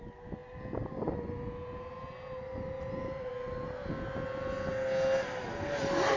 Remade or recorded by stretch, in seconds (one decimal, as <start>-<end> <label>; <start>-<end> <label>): 0.0-6.2 recorded